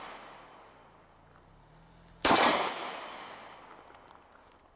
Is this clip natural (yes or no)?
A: yes